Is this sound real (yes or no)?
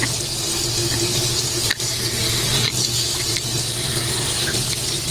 yes